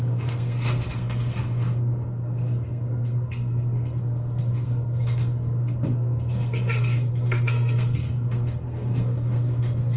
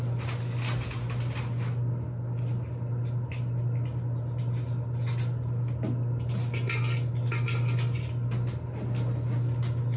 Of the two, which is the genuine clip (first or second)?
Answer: second